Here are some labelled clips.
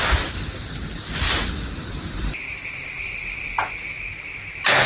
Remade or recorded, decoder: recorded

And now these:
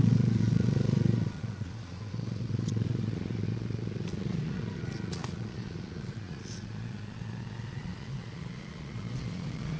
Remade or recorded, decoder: remade, vocoder, Vocos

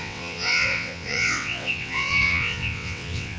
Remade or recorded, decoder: remade, vocoder, WaveNeXt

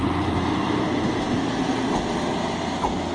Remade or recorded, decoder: recorded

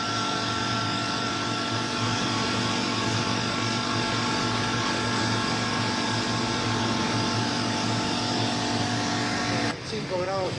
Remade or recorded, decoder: remade, codec, DAC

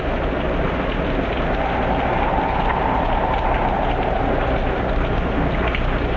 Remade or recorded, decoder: recorded